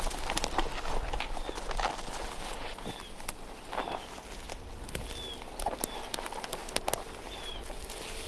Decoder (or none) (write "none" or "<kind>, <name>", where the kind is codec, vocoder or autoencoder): none